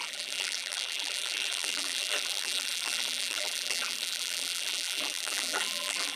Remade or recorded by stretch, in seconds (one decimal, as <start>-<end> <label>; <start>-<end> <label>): 0.0-6.2 remade

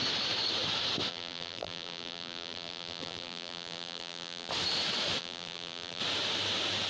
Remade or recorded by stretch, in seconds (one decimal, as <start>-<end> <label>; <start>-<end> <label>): 0.0-1.1 recorded; 1.1-4.5 remade; 4.5-5.2 recorded; 5.2-6.0 remade; 6.0-6.9 recorded

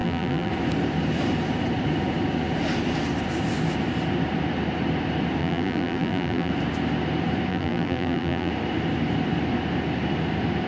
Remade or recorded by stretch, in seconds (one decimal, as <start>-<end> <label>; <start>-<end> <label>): 0.0-0.5 remade; 0.5-5.4 recorded; 5.4-6.5 remade; 6.5-7.5 recorded; 7.5-8.5 remade; 8.5-10.7 recorded